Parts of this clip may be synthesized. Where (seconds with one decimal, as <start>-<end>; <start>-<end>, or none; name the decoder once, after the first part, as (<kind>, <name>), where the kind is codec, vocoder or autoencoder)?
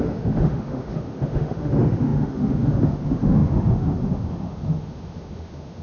0.0-5.8 (autoencoder, DAC-VAE)